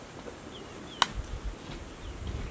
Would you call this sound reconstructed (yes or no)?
no